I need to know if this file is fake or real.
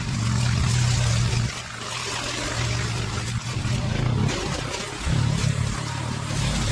real